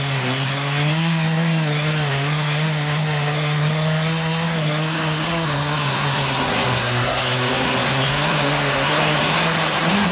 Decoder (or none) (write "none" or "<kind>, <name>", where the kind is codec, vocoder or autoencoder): codec, SNAC